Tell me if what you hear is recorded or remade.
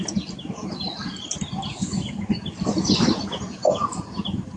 recorded